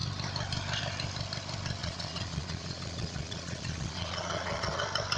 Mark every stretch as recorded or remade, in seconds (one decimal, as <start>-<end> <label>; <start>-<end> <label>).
0.0-1.8 recorded; 1.8-4.8 remade; 4.8-5.2 recorded